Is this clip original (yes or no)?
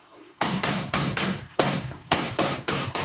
no